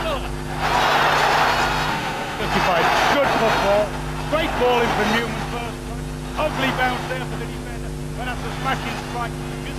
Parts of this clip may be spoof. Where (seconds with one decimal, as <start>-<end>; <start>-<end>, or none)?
1.9-2.4